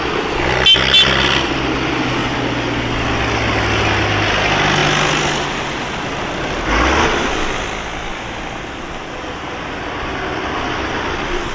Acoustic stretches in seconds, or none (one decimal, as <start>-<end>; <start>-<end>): 0.0-11.5